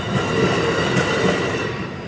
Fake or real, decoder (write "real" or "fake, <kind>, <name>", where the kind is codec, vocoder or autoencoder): real